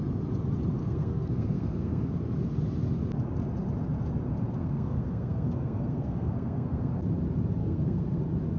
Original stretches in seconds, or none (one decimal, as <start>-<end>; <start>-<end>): 0.0-0.8; 2.1-4.6; 6.9-7.6; 8.2-8.6